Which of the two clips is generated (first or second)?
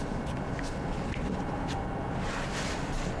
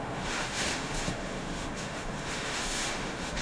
second